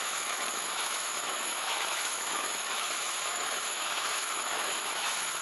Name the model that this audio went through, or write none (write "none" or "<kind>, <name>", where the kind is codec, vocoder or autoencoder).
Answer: autoencoder, DAC-VAE